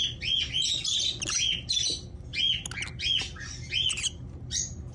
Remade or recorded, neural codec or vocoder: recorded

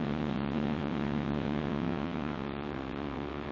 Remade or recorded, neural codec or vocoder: remade, vocoder, WaveNeXt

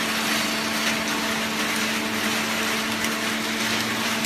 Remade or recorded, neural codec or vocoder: recorded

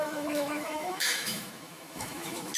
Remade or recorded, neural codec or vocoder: remade, autoencoder, DAC-VAE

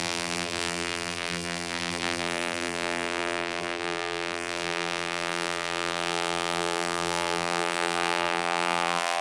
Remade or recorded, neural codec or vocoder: remade, vocoder, BigVGAN v2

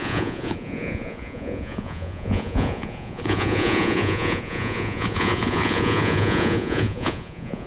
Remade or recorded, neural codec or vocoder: remade, vocoder, Vocos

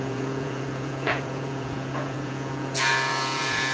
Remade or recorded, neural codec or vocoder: remade, vocoder, Vocos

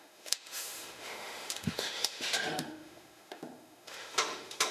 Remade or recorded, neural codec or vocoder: remade, autoencoder, DAC-VAE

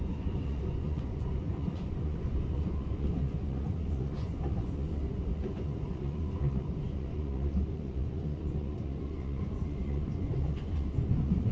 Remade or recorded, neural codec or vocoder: remade, vocoder, Vocos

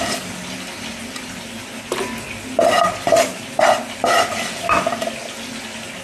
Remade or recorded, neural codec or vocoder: recorded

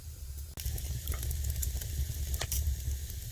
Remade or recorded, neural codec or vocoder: recorded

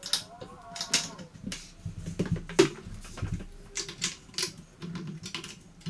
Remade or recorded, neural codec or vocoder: recorded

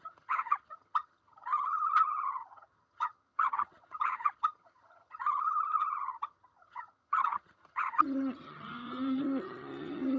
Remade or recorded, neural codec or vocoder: remade, vocoder, HiFi-GAN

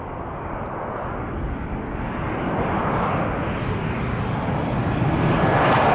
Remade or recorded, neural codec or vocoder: recorded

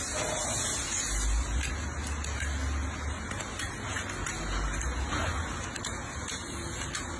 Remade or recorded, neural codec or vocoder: recorded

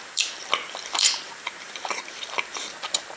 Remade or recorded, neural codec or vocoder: remade, vocoder, BigVGAN v2